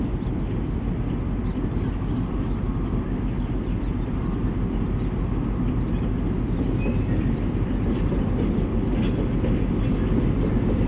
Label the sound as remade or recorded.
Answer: recorded